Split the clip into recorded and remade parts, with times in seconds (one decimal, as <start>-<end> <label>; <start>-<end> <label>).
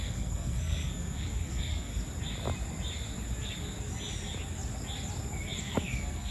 0.0-1.9 remade; 1.9-5.6 recorded; 5.6-6.3 remade